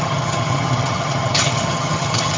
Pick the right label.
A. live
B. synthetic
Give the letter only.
B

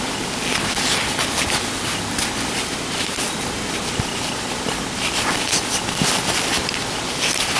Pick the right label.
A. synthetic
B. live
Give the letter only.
B